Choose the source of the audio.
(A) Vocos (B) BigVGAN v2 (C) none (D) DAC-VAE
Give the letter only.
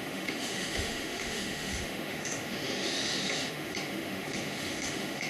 D